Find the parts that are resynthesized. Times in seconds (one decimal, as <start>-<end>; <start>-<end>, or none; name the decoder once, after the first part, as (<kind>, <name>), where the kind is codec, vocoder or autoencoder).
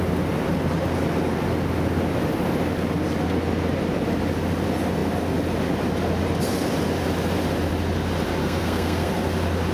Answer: 8.4-9.1 (codec, SNAC)